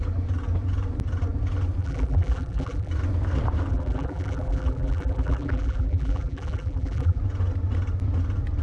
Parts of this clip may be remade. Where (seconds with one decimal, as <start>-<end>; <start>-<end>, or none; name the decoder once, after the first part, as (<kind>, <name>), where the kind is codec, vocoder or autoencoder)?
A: 1.8-2.9 (vocoder, BigVGAN v2); 3.7-7.2